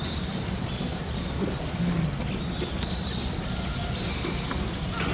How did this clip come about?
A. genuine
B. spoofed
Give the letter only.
A